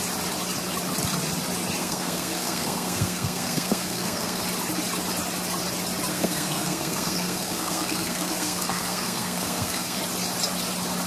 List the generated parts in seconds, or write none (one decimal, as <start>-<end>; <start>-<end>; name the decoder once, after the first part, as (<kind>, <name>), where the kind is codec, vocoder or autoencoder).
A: 1.8-4.4 (codec, SNAC); 6.1-10.0